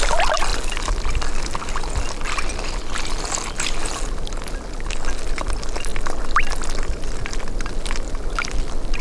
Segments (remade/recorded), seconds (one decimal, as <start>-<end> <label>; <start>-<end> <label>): 0.0-9.0 recorded